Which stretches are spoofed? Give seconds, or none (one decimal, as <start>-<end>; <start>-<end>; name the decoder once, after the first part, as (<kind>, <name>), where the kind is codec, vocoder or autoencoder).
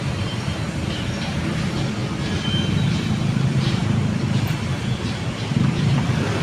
0.0-2.0 (vocoder, BigVGAN v2); 2.7-6.4